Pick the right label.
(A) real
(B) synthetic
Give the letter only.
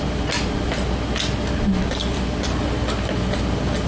A